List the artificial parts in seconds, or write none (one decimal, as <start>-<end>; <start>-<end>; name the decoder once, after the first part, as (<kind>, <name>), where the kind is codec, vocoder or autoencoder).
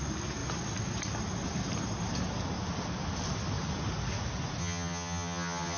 4.6-5.8 (vocoder, HiFi-GAN)